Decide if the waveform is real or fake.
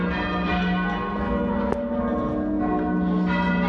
real